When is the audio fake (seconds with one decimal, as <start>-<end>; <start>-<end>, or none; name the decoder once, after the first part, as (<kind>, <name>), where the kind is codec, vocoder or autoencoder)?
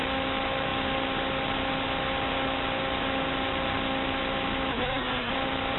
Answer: 4.7-5.3 (codec, SNAC)